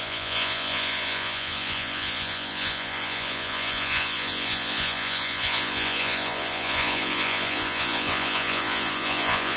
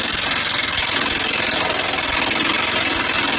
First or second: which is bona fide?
second